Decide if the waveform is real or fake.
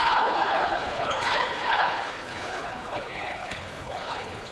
fake